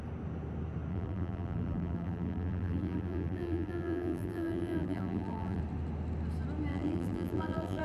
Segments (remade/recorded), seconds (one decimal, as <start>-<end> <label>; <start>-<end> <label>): 0.0-0.9 recorded; 0.9-5.6 remade; 5.6-6.7 recorded; 6.7-7.8 remade